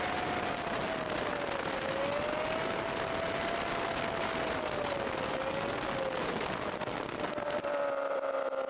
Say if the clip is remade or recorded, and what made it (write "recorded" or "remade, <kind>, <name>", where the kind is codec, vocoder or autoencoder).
recorded